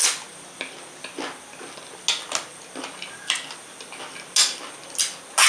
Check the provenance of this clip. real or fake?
real